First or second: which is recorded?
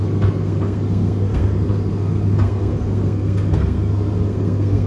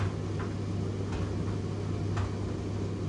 second